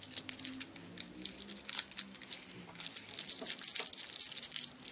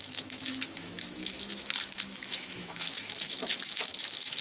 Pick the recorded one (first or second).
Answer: first